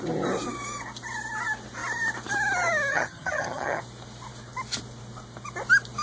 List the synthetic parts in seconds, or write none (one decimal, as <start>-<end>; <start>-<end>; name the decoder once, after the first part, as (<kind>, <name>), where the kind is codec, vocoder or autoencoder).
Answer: 2.9-3.8 (vocoder, HiFi-GAN)